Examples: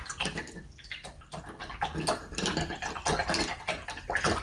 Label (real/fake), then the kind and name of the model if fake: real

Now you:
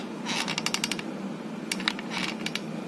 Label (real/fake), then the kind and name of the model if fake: real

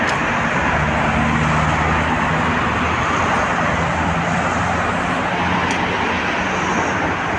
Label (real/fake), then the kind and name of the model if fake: real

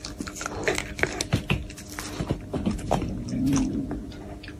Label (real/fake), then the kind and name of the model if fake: real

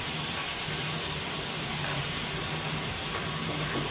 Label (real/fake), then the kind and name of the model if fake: real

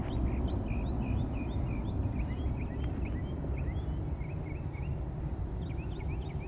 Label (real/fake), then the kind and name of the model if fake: real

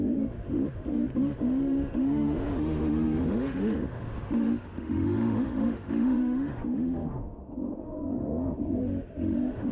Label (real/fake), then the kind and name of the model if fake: fake, autoencoder, DAC-VAE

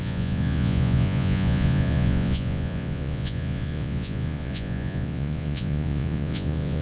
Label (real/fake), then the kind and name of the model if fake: fake, vocoder, Vocos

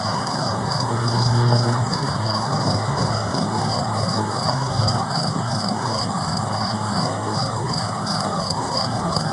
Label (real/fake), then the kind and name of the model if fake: fake, codec, SNAC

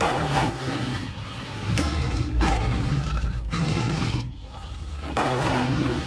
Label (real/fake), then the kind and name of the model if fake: fake, codec, SNAC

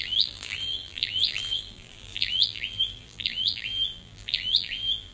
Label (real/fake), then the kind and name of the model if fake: fake, vocoder, BigVGAN v2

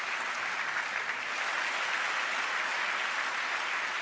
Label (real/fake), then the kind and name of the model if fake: real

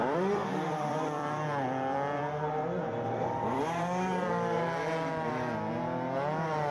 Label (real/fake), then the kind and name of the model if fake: fake, vocoder, BigVGAN v2